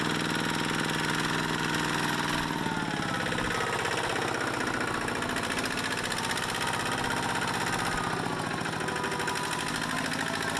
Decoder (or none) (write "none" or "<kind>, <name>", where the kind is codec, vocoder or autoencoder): none